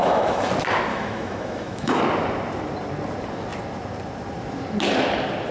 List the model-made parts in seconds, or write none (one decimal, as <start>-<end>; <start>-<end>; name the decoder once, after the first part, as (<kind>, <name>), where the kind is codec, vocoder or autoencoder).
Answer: 0.0-0.5 (autoencoder, DAC-VAE); 0.9-2.0